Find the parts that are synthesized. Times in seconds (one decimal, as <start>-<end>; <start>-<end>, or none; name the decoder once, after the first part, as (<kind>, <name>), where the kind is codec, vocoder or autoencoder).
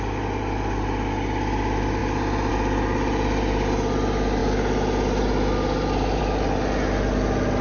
none